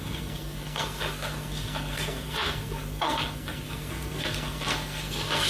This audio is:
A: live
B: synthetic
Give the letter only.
B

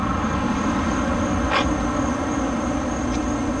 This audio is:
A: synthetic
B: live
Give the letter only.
B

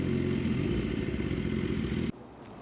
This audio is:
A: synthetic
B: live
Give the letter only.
B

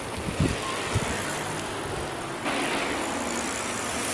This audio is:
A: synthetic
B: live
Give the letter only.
B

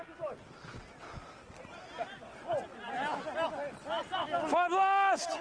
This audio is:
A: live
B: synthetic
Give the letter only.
A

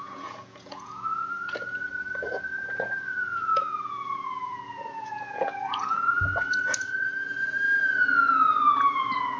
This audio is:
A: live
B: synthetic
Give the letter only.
B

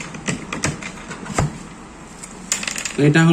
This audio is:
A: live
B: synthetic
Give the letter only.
A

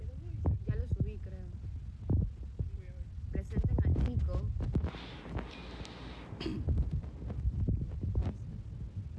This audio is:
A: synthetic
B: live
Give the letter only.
B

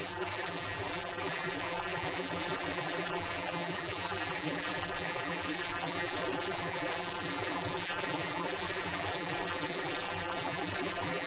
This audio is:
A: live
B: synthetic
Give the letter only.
B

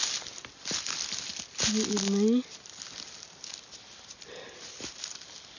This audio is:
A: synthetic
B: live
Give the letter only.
B